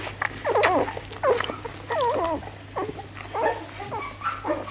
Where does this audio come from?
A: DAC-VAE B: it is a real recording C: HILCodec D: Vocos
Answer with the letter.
B